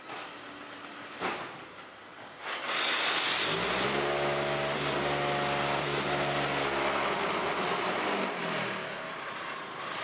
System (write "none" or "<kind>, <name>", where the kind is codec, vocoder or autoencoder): none